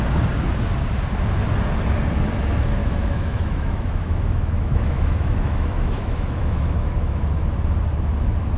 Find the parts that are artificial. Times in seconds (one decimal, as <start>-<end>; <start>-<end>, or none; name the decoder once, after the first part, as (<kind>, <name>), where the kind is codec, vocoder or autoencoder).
2.8-7.2 (autoencoder, DAC-VAE)